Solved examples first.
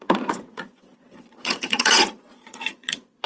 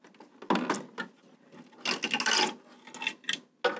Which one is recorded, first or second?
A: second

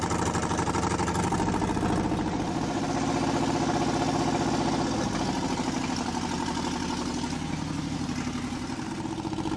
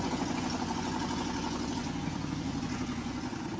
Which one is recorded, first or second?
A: first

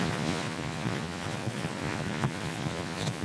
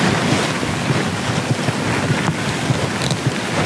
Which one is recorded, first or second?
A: second